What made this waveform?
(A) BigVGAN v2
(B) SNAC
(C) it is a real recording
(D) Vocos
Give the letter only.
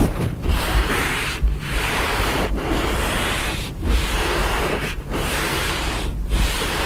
A